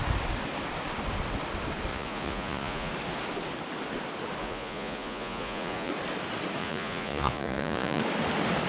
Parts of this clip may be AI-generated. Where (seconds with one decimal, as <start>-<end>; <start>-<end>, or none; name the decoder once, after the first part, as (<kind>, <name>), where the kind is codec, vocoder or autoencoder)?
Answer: 1.9-2.9 (vocoder, Vocos); 4.4-5.9; 6.6-8.0